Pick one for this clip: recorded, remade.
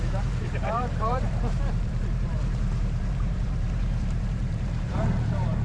remade